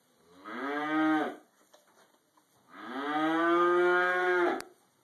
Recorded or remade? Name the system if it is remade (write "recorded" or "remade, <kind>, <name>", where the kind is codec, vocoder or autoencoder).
recorded